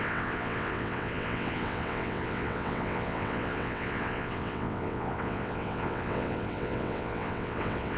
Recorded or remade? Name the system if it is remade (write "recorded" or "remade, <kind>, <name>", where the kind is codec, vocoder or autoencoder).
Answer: remade, vocoder, WaveNeXt